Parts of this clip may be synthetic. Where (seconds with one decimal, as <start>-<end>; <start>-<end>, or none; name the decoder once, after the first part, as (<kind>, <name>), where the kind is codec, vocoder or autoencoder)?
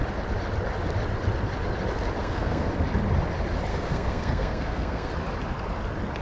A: 2.2-2.7 (codec, SNAC); 3.7-5.1